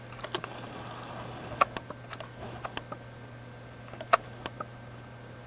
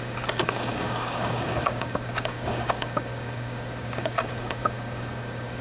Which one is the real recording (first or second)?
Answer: first